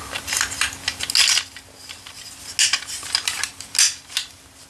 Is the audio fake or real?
real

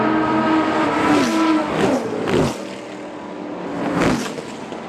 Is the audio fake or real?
real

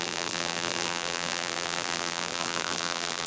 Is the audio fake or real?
fake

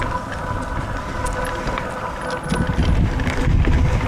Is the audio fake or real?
real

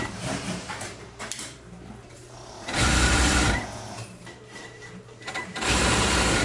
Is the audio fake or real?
fake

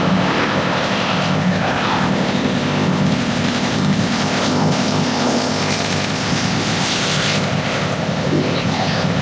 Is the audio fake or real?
fake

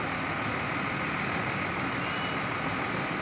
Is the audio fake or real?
real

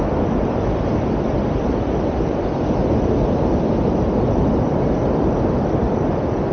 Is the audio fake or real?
fake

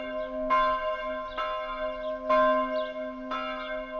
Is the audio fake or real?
real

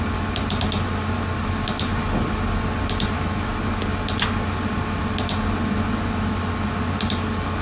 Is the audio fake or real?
real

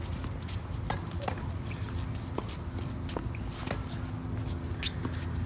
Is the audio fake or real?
real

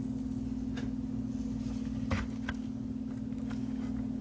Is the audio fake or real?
real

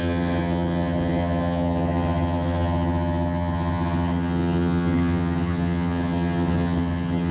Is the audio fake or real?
fake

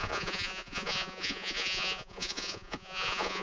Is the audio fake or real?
fake